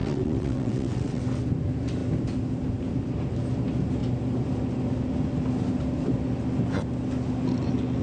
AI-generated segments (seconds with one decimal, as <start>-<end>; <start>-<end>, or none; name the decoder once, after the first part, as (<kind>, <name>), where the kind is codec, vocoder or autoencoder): 0.0-1.2 (vocoder, WaveNeXt)

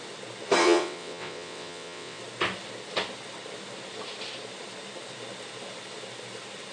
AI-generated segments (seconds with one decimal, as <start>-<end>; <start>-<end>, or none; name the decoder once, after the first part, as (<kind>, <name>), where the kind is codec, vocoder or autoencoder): 0.6-2.2 (vocoder, WaveNeXt)

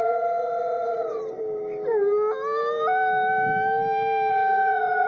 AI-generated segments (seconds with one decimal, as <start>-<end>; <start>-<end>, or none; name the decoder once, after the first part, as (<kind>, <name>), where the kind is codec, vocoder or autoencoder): 0.0-1.2 (vocoder, WaveNeXt); 4.3-5.1

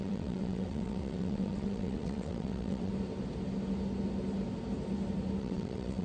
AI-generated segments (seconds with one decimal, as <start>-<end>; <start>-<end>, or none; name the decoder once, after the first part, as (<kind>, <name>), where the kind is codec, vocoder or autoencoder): 0.0-2.9 (vocoder, WaveNeXt); 5.4-6.0